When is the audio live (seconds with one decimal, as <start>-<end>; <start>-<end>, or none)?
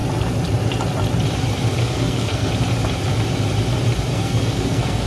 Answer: 0.0-1.8; 2.5-4.1